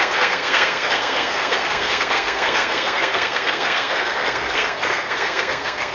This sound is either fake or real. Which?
fake